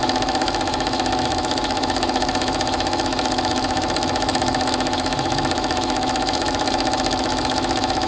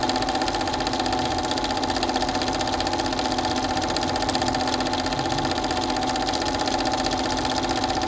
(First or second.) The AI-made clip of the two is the first